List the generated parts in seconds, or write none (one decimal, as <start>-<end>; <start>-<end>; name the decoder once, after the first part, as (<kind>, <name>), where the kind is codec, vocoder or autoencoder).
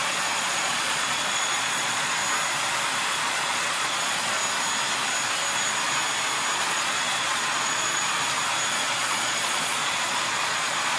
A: 0.0-2.2 (vocoder, Vocos); 3.1-4.4; 6.6-8.0; 8.7-11.0